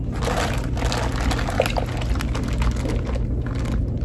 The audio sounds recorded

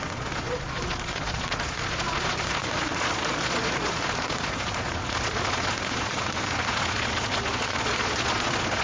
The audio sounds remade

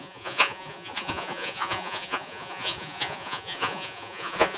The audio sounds remade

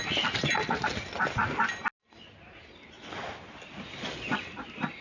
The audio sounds recorded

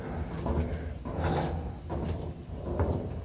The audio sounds recorded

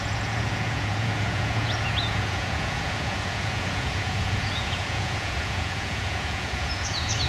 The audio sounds remade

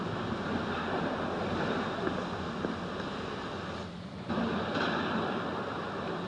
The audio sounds recorded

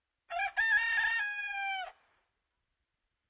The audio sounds recorded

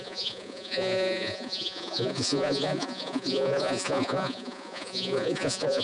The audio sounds remade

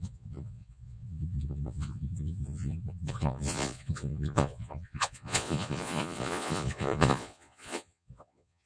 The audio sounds remade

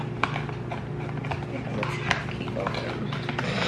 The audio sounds recorded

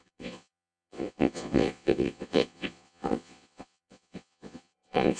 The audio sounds remade